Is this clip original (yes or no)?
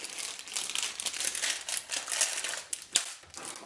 yes